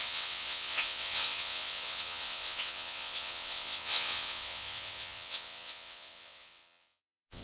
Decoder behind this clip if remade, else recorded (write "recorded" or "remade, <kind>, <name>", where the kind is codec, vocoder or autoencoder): remade, vocoder, WaveNeXt